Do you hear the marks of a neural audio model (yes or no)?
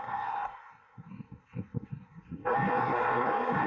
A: yes